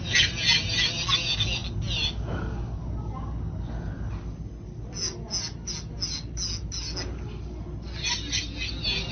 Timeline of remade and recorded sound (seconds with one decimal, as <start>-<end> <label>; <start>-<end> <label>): 0.0-9.1 recorded